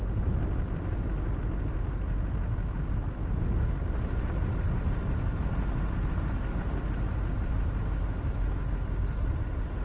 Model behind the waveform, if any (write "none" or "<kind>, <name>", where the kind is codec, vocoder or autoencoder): none